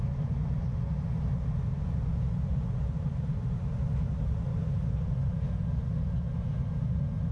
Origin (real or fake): real